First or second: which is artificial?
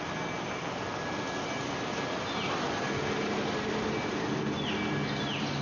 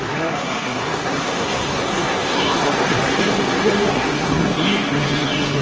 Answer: second